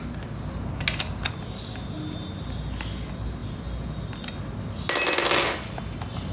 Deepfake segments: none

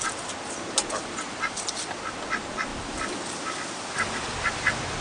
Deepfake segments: none

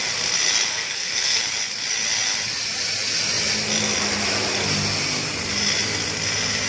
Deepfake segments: 0.7-1.4 (codec, SNAC)

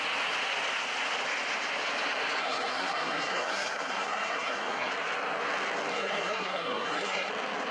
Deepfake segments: 2.4-4.9 (codec, SNAC); 5.9-7.3

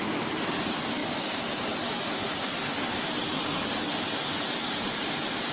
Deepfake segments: none